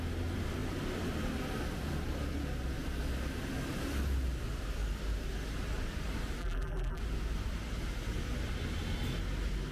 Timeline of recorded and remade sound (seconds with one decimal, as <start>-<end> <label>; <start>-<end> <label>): 0.0-6.4 recorded; 6.4-7.0 remade; 7.0-9.7 recorded